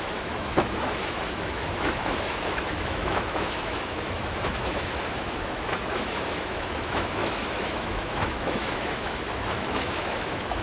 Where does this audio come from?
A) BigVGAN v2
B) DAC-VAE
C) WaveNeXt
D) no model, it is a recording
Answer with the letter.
B